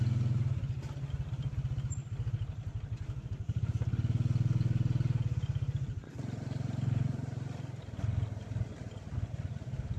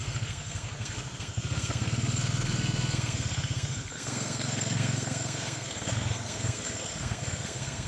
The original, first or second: first